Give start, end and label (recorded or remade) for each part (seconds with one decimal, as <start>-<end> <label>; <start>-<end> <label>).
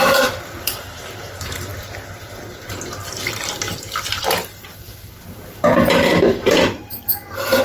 0.0-1.7 remade; 1.7-4.4 recorded; 4.4-7.6 remade